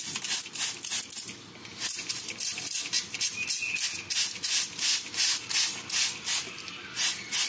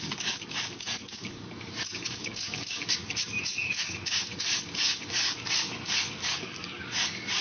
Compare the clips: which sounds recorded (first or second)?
first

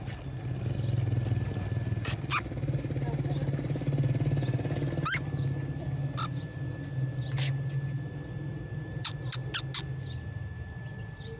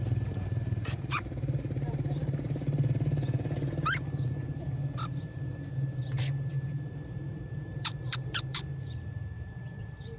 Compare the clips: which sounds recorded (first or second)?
first